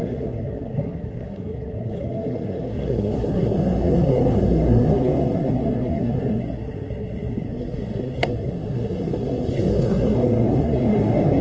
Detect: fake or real fake